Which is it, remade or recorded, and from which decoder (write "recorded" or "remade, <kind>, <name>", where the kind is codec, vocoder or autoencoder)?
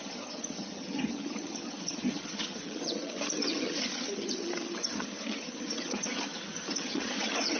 remade, vocoder, HiFi-GAN